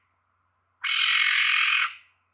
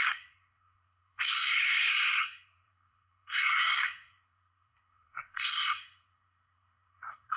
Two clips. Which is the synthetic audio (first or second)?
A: second